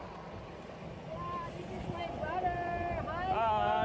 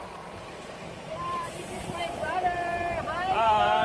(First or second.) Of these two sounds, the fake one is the second